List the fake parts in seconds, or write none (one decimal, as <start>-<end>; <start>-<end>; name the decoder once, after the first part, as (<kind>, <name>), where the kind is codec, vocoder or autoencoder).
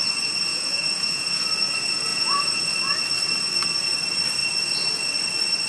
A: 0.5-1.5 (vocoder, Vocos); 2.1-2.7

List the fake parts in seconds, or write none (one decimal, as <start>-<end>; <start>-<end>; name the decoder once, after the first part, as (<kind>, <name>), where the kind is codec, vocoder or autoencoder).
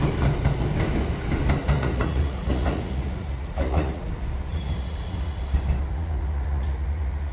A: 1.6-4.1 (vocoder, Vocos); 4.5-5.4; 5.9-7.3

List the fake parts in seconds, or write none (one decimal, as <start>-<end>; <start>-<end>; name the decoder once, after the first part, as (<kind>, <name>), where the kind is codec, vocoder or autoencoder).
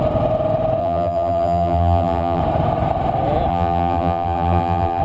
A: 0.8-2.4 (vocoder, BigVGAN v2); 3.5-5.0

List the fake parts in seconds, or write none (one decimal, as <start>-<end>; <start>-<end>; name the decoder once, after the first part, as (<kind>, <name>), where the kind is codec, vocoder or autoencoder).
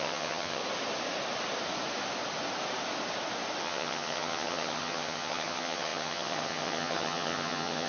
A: 0.0-0.6 (vocoder, HiFi-GAN); 3.6-7.9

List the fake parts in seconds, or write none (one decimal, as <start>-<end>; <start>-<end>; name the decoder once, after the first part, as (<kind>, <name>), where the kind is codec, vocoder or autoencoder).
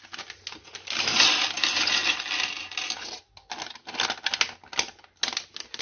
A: none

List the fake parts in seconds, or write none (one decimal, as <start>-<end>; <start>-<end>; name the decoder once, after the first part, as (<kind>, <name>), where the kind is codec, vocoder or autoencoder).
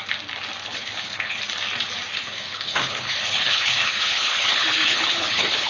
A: 0.6-1.4 (codec, HILCodec); 2.1-5.7